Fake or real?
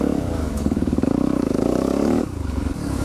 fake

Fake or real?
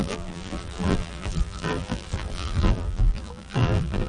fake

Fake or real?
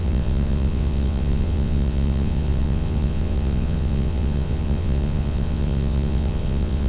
fake